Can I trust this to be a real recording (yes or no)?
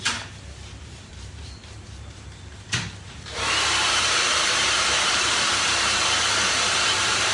no